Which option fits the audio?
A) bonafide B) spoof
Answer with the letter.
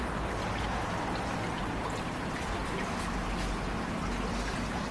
A